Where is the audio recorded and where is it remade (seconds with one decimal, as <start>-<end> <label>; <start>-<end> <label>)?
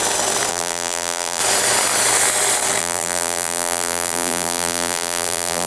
0.0-0.5 recorded; 0.5-1.4 remade; 1.4-2.8 recorded; 2.8-5.7 remade